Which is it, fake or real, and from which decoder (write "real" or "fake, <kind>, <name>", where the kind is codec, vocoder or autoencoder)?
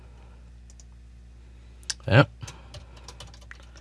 real